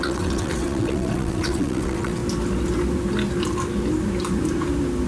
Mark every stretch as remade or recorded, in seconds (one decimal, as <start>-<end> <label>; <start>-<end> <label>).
0.0-2.2 remade; 2.2-5.1 recorded